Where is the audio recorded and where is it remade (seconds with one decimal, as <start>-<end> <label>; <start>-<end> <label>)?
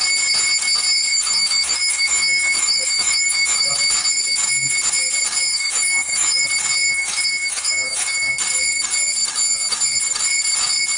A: 0.0-1.1 recorded; 1.1-3.7 remade; 3.7-5.5 recorded; 5.5-6.5 remade; 6.5-6.9 recorded; 6.9-8.3 remade; 8.3-11.0 recorded